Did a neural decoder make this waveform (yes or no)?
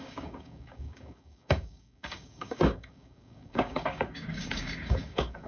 yes